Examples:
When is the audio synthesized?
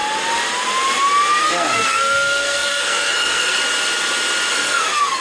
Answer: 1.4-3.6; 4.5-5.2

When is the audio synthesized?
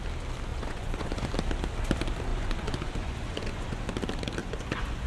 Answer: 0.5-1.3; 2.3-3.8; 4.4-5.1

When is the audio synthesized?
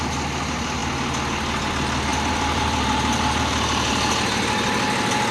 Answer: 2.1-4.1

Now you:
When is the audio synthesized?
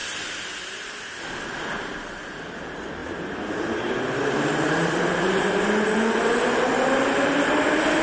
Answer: none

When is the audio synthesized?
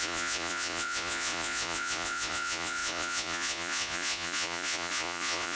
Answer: 0.0-5.6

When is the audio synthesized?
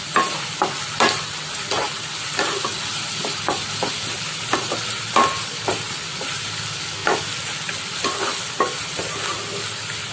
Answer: none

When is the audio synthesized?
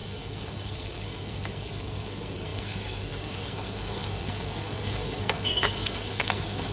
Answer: 0.0-6.7